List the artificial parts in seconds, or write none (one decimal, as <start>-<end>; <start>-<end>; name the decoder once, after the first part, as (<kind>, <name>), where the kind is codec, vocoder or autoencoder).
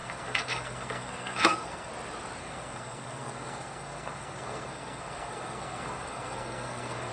0.0-1.9 (codec, SNAC); 2.4-7.1